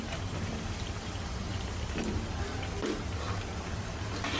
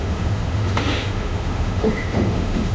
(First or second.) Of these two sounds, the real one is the first